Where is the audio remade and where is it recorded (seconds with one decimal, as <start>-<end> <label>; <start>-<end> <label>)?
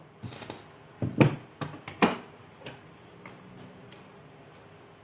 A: 0.0-5.0 recorded